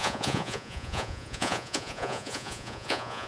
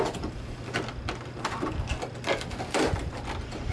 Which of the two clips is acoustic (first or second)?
second